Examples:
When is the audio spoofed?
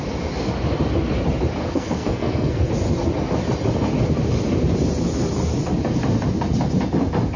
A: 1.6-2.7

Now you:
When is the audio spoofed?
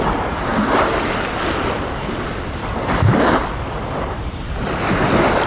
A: none